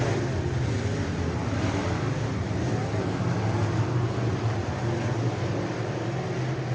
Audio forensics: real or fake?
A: real